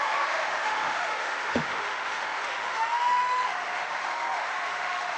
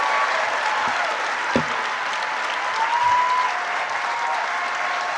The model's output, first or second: first